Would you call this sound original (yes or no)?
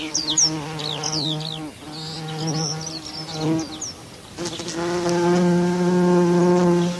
yes